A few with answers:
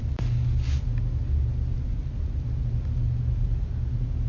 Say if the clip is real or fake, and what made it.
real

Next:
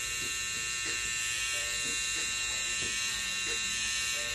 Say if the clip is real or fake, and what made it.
fake, vocoder, BigVGAN v2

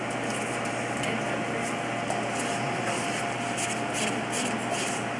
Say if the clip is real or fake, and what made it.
real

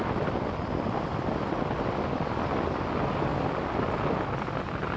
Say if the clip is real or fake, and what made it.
real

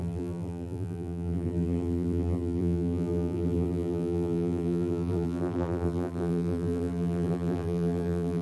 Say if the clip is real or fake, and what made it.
fake, vocoder, BigVGAN v2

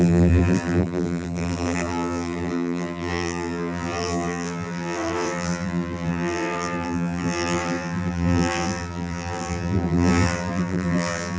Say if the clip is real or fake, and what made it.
fake, vocoder, BigVGAN v2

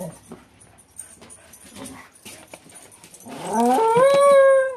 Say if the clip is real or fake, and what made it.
real